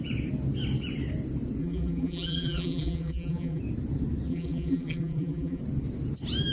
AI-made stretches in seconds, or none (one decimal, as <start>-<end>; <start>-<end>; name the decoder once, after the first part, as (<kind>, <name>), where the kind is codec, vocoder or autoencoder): 1.6-3.6 (vocoder, BigVGAN v2); 4.3-5.6